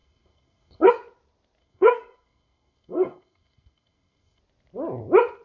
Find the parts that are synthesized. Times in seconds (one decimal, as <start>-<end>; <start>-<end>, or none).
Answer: 0.0-0.9; 1.6-4.4